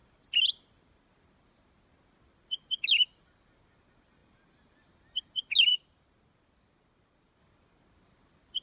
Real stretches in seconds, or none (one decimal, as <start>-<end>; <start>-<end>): 0.0-8.6